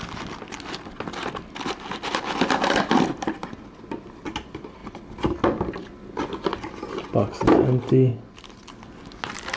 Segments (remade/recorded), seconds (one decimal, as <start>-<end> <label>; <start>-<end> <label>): 0.0-3.4 recorded; 3.4-4.2 remade; 4.2-9.6 recorded